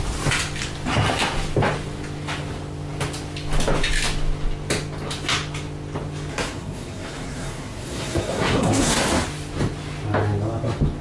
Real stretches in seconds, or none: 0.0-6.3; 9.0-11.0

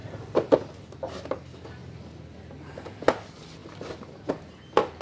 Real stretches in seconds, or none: 0.6-1.8; 2.9-5.0

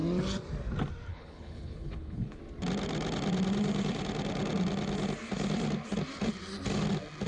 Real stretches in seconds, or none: 0.0-1.1; 2.4-7.3